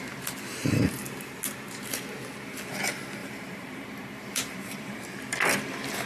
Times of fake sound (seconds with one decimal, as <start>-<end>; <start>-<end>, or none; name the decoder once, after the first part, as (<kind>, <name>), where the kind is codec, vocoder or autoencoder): 0.6-1.3 (vocoder, BigVGAN v2); 3.2-5.0